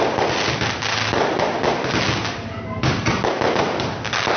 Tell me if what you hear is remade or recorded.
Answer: recorded